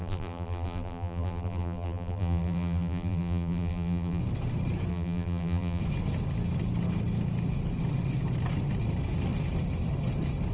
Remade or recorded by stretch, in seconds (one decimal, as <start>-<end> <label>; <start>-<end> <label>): 0.0-4.2 remade; 4.2-4.9 recorded; 4.9-5.8 remade; 5.8-10.5 recorded